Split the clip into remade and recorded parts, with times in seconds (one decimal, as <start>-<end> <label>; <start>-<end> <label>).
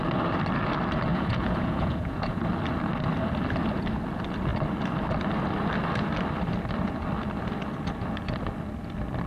0.0-1.1 recorded; 1.1-2.5 remade; 2.5-9.3 recorded